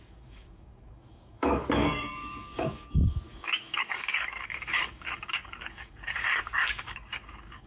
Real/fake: fake